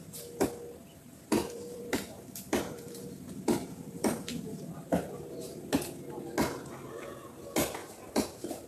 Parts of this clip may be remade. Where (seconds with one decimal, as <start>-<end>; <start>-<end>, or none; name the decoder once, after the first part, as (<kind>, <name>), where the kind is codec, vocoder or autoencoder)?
1.3-5.6 (vocoder, BigVGAN v2); 7.8-8.7